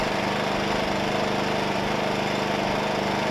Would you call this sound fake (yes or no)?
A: no